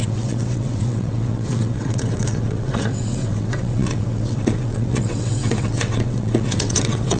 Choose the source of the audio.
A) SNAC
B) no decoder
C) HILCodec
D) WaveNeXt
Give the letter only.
D